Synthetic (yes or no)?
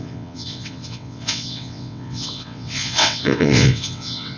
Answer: yes